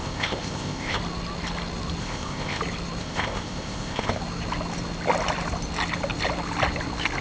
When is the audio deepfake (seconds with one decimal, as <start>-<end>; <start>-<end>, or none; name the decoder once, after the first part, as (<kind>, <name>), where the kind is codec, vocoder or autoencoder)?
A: 0.0-1.0 (codec, ZipCodec); 2.0-2.6; 3.0-4.2